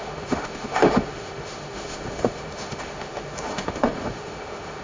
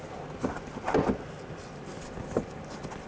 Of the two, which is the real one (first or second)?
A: second